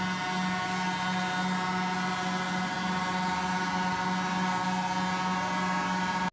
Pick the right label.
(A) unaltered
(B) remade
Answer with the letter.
A